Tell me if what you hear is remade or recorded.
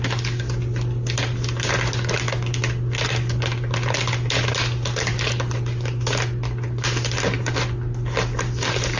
recorded